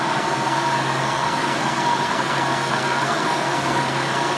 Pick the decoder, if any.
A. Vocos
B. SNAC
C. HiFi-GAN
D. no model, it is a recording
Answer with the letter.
B